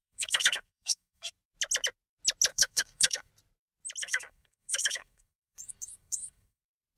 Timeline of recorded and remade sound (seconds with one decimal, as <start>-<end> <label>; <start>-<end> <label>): 0.0-1.3 remade; 1.3-2.5 recorded; 2.5-3.3 remade; 3.3-4.0 recorded; 4.0-6.6 remade; 6.6-7.0 recorded